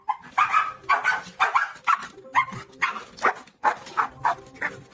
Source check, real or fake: real